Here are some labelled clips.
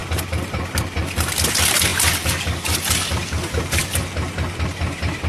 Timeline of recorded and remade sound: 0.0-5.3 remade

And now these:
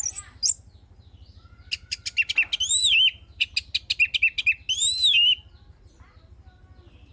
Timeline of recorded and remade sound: 0.0-7.1 recorded

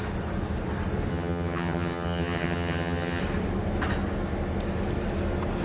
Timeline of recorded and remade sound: 0.0-1.1 recorded; 1.1-3.2 remade; 3.2-5.6 recorded

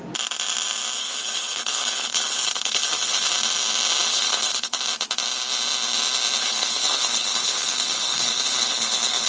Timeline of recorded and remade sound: 0.0-1.0 recorded; 1.0-3.3 remade; 3.3-4.1 recorded; 4.1-4.8 remade; 4.8-6.4 recorded; 6.4-9.3 remade

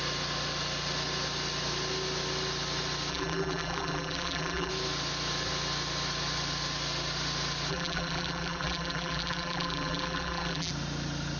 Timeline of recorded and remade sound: 0.0-3.1 recorded; 3.1-4.7 remade; 4.7-7.7 recorded; 7.7-10.7 remade; 10.7-11.4 recorded

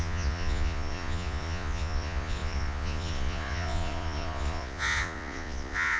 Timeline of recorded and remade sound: 0.0-6.0 remade

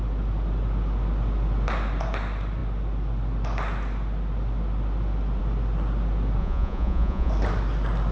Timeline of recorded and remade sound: 0.0-6.4 recorded; 6.4-7.3 remade; 7.3-8.1 recorded